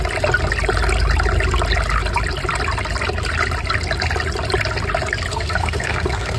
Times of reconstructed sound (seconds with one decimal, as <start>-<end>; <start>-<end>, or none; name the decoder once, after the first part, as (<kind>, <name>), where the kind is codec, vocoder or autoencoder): 5.3-6.4 (codec, SNAC)

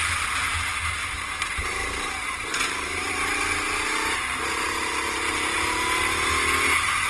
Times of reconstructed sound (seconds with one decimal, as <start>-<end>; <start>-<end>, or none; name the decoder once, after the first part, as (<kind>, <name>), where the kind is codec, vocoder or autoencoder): 1.0-3.1 (vocoder, BigVGAN v2)

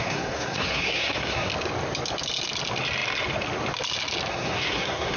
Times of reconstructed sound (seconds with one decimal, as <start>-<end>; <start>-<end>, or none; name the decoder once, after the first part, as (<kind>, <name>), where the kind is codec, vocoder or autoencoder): 0.0-1.5 (codec, SNAC); 4.3-5.2

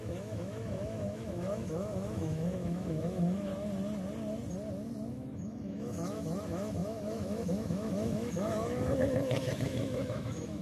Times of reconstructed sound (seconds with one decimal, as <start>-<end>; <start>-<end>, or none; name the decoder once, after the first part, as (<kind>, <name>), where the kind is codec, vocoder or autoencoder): 0.0-3.5 (autoencoder, DAC-VAE); 5.1-10.6